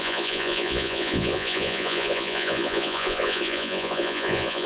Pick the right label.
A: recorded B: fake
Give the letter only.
B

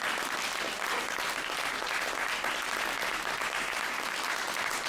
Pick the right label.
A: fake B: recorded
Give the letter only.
B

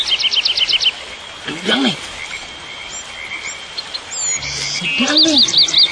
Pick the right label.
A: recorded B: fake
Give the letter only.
A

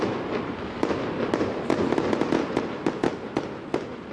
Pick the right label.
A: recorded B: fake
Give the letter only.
A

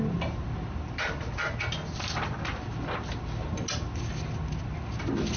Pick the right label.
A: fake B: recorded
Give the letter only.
B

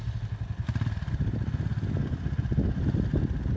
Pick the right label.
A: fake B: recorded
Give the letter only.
B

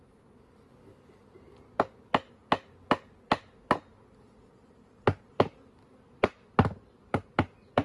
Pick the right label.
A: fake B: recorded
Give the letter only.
B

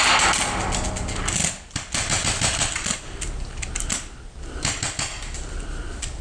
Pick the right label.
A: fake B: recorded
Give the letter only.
B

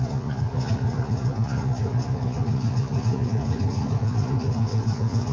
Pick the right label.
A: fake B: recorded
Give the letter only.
A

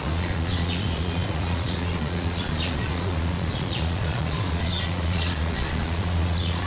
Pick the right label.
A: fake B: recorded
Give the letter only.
A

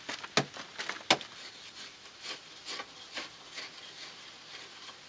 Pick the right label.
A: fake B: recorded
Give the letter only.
B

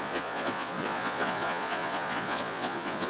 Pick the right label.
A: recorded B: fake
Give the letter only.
B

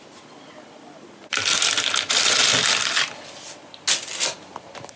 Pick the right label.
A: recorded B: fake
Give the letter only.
A